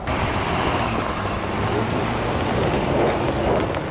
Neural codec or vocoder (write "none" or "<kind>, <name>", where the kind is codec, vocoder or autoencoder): none